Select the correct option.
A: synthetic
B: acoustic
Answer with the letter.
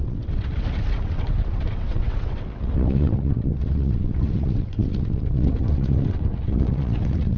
A